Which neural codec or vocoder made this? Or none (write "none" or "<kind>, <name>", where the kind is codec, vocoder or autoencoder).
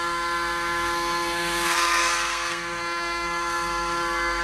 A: codec, SNAC